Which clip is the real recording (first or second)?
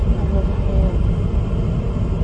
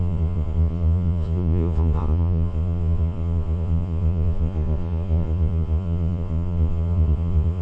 first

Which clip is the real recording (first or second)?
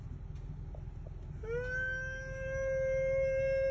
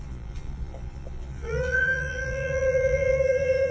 first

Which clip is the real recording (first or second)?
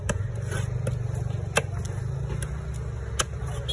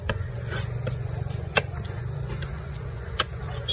first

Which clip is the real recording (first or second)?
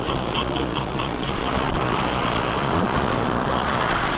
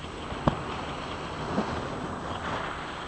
second